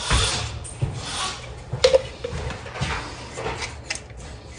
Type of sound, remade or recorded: recorded